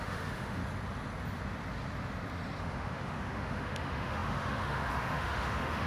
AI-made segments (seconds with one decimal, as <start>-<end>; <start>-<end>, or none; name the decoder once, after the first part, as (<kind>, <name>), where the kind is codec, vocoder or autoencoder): 0.0-0.6 (autoencoder, DAC-VAE); 2.6-5.9